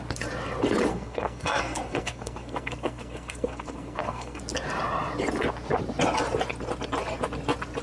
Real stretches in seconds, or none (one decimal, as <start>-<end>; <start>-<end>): 0.0-0.9; 4.4-7.8